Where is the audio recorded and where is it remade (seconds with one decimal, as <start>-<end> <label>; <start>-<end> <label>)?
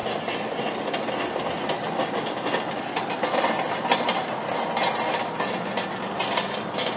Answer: 0.0-7.0 recorded